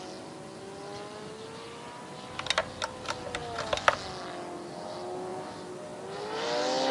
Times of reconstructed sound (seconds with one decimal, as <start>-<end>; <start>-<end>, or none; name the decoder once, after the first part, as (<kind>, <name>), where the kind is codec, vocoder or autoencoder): none